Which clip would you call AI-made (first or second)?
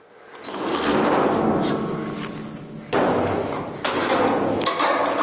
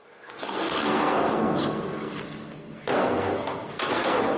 second